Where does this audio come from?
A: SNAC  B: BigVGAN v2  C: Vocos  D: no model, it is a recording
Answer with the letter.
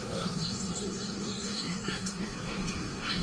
A